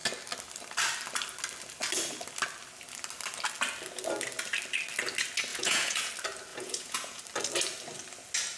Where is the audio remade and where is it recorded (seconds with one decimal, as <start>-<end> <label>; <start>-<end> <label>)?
0.0-5.5 recorded; 5.5-6.1 remade; 6.1-6.5 recorded; 6.5-7.2 remade; 7.2-8.6 recorded